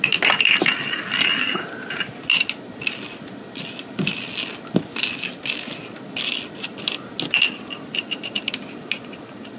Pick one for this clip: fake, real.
real